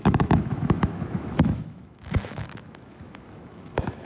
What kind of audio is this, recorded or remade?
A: remade